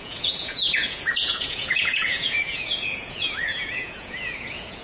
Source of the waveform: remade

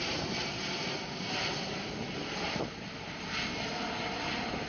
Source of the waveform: recorded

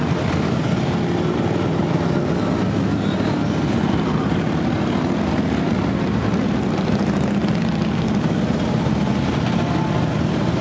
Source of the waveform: recorded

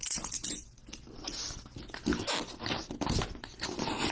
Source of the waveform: recorded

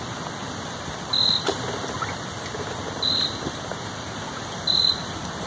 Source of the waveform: recorded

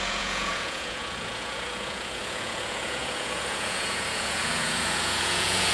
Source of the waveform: remade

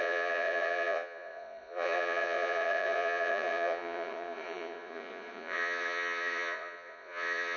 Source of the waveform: remade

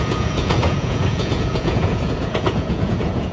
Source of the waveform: remade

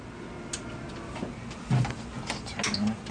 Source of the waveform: recorded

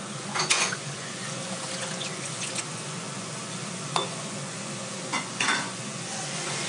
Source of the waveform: remade